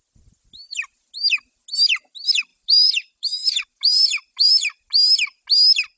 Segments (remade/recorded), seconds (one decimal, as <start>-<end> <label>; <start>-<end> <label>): 0.0-2.5 recorded; 2.5-4.5 remade; 4.5-6.0 recorded